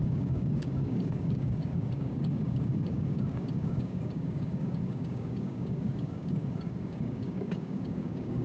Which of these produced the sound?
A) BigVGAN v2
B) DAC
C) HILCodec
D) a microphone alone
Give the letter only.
B